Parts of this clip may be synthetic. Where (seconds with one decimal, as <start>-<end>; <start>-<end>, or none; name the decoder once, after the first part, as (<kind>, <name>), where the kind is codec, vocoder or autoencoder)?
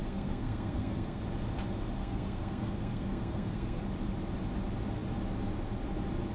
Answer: 0.0-1.2 (codec, SNAC); 2.0-3.8